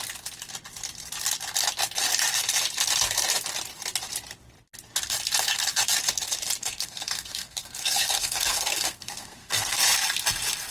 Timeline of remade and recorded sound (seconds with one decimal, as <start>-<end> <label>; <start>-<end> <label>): 0.0-6.6 recorded; 6.6-9.8 remade; 9.8-10.7 recorded